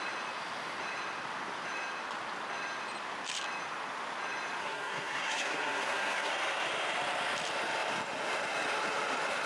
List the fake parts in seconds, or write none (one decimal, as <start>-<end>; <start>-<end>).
4.6-6.3